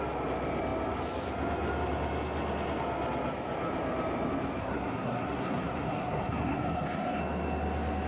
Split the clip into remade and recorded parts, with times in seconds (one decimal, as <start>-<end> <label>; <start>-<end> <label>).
0.0-4.6 recorded; 4.6-7.2 remade; 7.2-8.1 recorded